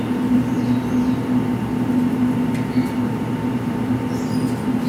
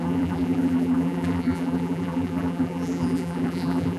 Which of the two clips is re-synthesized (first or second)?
second